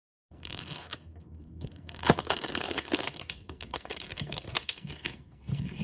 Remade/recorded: remade